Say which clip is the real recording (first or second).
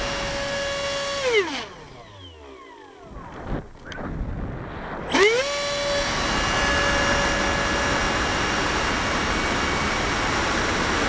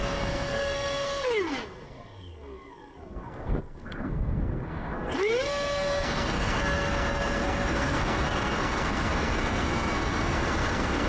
first